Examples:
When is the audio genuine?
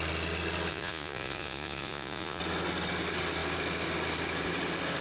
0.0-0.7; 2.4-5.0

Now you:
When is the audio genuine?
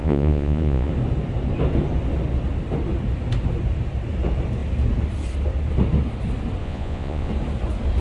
0.9-6.6; 7.3-8.0